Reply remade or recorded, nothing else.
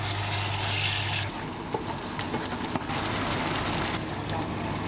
recorded